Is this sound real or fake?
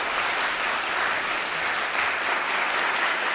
real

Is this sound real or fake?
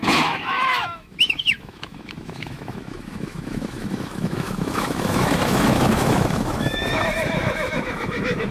fake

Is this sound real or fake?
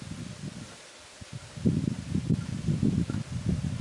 real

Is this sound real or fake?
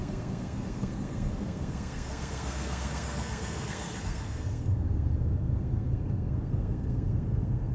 fake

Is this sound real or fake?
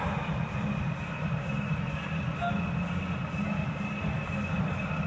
real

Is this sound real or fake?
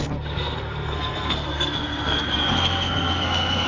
fake